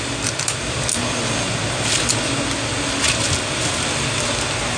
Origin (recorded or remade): recorded